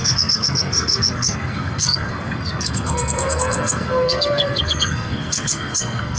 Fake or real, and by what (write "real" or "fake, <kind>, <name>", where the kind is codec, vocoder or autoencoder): fake, codec, SNAC